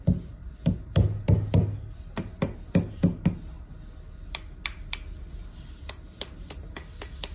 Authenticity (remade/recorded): recorded